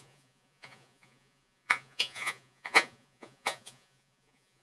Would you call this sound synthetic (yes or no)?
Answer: yes